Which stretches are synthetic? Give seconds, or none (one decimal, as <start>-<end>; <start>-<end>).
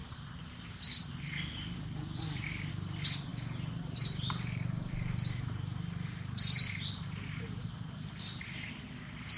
3.3-4.9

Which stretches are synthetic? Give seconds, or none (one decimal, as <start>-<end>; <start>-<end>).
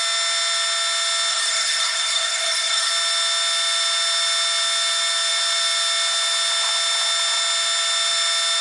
1.3-2.9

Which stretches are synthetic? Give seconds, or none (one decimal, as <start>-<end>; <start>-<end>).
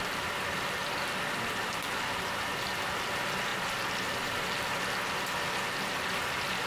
none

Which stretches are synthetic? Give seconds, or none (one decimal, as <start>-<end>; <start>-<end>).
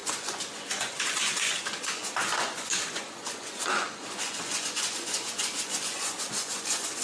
0.0-7.0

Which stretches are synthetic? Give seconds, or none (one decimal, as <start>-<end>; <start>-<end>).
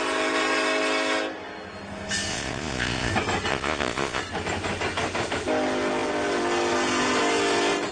2.3-3.1; 3.5-4.2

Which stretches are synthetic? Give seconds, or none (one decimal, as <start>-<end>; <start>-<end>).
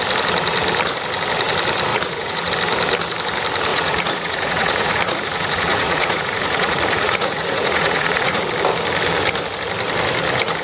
1.9-2.5; 3.7-8.4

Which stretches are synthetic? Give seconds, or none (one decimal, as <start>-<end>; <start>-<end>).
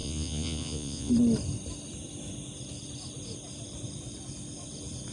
0.0-1.1